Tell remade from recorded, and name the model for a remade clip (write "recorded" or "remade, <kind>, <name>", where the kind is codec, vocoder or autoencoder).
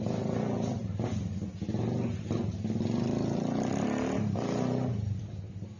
recorded